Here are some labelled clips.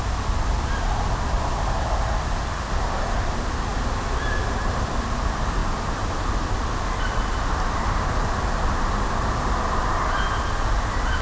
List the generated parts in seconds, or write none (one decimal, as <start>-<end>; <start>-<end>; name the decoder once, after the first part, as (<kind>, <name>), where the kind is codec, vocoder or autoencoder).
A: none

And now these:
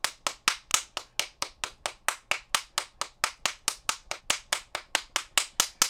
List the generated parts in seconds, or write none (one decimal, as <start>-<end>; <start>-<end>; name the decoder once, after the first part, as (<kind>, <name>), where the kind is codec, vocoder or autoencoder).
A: none

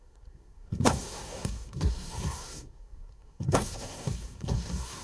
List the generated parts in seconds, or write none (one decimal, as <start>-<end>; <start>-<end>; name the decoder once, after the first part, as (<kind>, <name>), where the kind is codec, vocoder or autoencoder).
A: 0.0-5.0 (codec, SNAC)

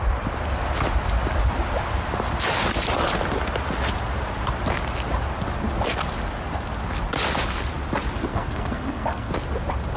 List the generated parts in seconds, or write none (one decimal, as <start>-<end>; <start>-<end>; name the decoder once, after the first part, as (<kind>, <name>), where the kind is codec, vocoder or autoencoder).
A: 8.3-9.3 (codec, SNAC)

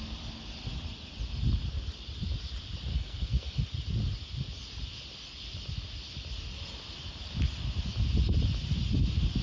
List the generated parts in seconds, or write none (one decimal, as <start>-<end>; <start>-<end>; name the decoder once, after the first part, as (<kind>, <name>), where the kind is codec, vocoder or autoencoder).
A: 2.9-3.6 (codec, SNAC)

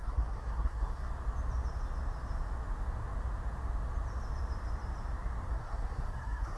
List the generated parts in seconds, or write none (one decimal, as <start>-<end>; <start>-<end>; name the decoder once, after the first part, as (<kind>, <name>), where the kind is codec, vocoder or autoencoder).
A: 0.0-1.1 (codec, SNAC); 5.5-6.6

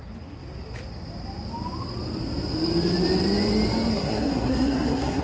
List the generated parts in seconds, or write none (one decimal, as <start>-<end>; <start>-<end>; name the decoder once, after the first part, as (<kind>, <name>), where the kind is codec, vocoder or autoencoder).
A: 3.9-5.2 (codec, SNAC)

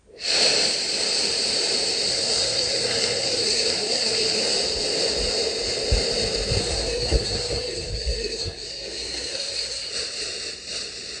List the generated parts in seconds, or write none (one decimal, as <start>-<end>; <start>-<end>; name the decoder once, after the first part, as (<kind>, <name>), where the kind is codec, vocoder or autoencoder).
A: 2.1-4.4 (codec, SNAC); 6.6-9.9